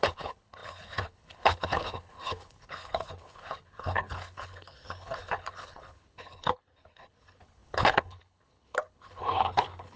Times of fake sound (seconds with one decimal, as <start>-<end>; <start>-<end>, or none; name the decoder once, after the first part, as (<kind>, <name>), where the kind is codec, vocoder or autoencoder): 0.0-10.0 (codec, HILCodec)